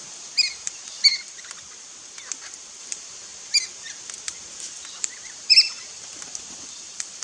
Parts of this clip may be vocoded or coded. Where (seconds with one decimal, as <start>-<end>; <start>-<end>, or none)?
0.7-1.1; 2.8-3.3; 5.0-7.2